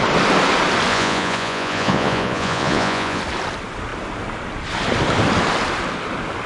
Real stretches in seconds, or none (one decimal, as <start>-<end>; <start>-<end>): 0.0-0.9; 3.2-6.5